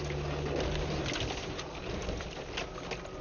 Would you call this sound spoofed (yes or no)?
no